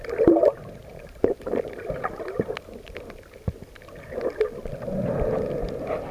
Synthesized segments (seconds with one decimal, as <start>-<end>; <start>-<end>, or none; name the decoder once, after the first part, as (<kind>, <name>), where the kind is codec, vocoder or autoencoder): 0.9-2.3 (vocoder, BigVGAN v2)